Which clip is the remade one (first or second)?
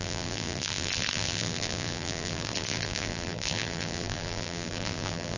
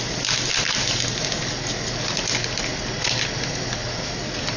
first